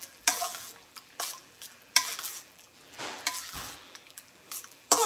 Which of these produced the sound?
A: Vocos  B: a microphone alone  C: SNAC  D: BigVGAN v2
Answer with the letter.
D